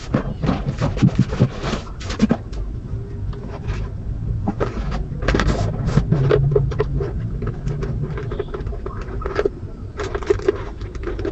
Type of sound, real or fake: real